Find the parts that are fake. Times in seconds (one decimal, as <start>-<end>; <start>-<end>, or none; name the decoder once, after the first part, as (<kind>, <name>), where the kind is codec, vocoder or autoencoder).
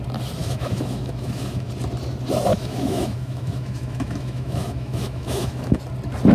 0.4-1.7 (autoencoder, DAC-VAE); 2.5-5.8